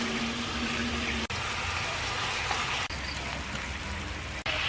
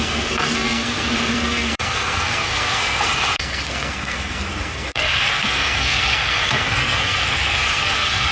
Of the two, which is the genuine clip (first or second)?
first